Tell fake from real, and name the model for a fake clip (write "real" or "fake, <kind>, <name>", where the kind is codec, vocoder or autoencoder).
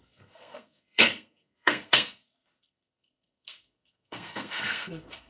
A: fake, codec, SNAC